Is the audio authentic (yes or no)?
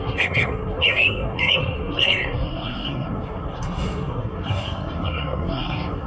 no